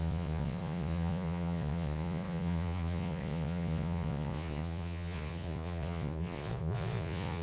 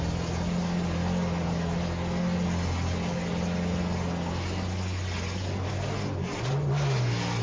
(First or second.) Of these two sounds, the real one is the second